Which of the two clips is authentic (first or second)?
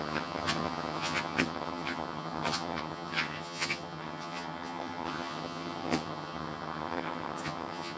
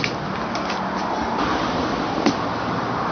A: second